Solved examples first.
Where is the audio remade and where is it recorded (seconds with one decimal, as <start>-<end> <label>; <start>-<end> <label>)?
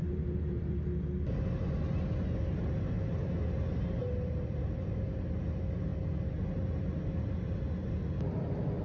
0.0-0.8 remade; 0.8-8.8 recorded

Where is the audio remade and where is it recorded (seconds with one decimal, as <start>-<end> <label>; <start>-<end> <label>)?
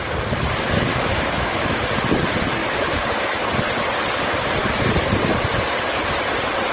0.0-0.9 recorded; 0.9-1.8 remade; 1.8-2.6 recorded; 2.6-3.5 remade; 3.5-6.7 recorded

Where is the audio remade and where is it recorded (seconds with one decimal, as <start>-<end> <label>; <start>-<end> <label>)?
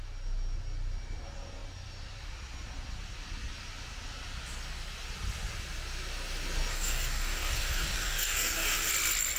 0.0-6.7 recorded; 6.7-8.9 remade; 8.9-9.4 recorded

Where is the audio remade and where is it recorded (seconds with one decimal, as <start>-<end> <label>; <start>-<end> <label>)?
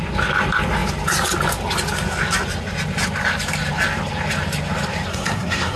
0.0-5.1 recorded; 5.1-5.8 remade